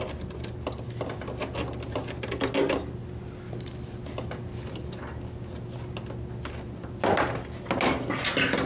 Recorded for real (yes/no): yes